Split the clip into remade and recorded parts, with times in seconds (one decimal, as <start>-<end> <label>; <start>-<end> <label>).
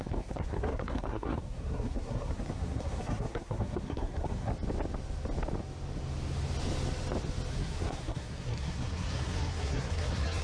0.0-4.5 remade; 4.5-7.5 recorded; 7.5-10.4 remade